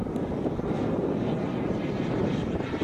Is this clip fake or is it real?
real